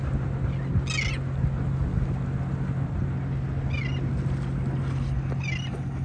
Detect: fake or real real